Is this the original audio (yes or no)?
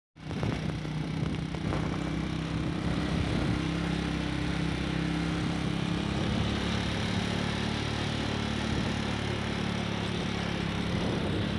yes